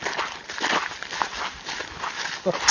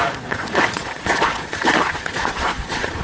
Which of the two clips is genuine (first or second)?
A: first